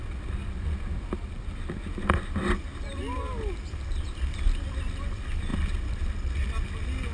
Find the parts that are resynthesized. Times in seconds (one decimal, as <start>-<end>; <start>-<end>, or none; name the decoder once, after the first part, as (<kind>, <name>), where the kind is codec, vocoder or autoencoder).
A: none